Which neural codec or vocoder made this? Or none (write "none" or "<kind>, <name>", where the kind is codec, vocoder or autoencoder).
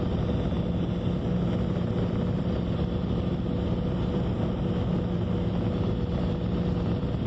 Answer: none